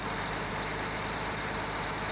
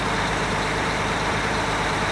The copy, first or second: second